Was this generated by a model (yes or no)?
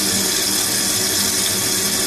no